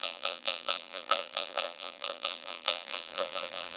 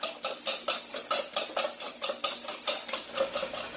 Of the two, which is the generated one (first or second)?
first